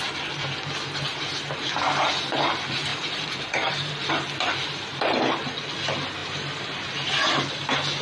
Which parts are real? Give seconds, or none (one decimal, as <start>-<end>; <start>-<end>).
0.0-2.9; 3.9-4.9; 5.4-8.0